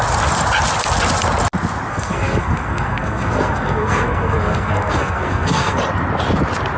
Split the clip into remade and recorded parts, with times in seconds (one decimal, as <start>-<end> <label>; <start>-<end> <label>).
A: 0.0-1.9 recorded; 1.9-5.8 remade; 5.8-6.8 recorded